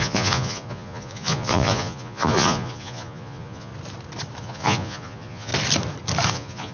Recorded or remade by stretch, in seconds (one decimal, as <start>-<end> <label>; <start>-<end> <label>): 0.0-3.7 remade; 3.7-4.4 recorded; 4.4-5.5 remade; 5.5-6.3 recorded; 6.3-6.7 remade